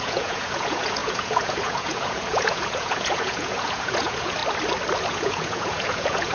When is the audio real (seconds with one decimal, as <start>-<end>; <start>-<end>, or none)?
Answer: 4.4-5.1